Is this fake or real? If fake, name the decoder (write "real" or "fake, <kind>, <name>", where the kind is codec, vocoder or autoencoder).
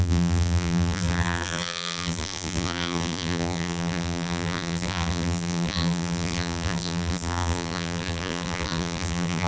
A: fake, vocoder, BigVGAN v2